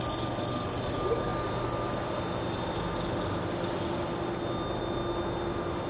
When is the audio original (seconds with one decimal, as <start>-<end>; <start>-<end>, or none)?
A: 0.0-5.9